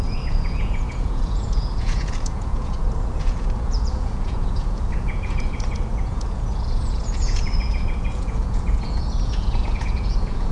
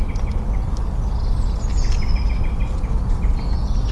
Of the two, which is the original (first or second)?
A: second